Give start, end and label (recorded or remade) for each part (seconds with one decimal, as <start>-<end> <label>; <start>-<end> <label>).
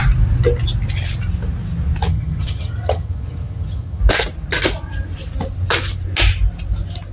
0.0-2.1 recorded; 2.1-4.0 remade; 4.0-7.1 recorded